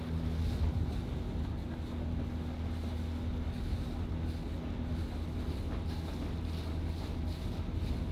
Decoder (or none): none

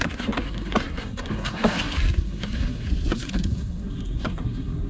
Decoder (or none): codec, SNAC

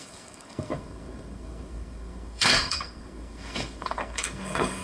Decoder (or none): codec, SNAC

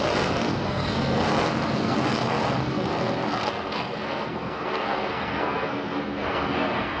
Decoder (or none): codec, SNAC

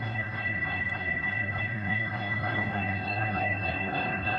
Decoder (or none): codec, SNAC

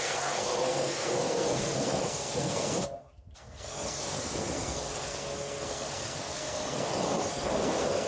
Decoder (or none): codec, SNAC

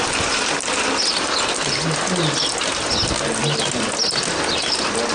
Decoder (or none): none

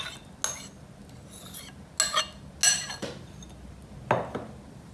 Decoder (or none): none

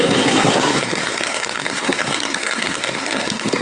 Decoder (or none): codec, SNAC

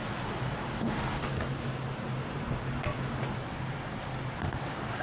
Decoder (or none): none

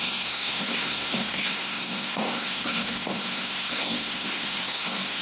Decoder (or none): codec, SNAC